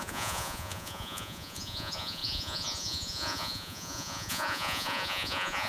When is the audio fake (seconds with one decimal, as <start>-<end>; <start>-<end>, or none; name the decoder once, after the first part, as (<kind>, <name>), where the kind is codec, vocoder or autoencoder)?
0.0-5.7 (vocoder, Vocos)